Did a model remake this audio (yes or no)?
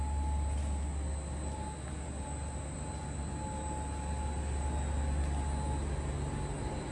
no